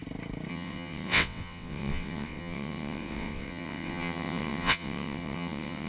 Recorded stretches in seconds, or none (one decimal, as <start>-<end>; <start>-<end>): 0.0-0.5